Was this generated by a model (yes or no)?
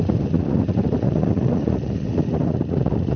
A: yes